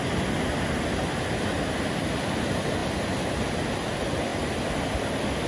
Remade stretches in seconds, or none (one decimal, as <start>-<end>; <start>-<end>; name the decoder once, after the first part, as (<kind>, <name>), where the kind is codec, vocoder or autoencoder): none